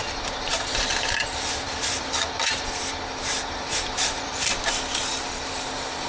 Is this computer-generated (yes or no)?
yes